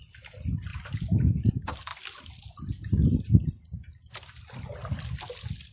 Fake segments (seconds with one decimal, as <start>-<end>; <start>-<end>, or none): none